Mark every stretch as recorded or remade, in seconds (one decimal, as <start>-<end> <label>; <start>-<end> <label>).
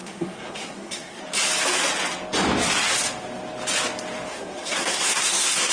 0.0-1.2 remade; 1.2-4.3 recorded; 4.3-5.7 remade